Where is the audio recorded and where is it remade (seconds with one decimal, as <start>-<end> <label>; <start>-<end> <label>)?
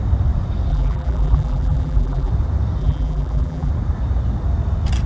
0.0-0.7 recorded; 0.7-2.3 remade; 2.3-2.8 recorded; 2.8-3.7 remade; 3.7-5.1 recorded